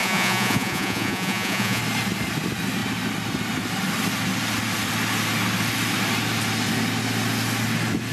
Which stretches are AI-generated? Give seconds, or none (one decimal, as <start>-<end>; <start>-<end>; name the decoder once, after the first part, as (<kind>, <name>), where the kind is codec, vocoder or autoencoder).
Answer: 0.0-1.8 (vocoder, Vocos)